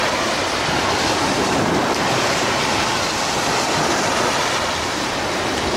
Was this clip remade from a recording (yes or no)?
no